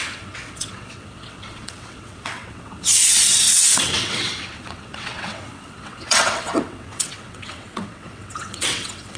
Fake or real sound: fake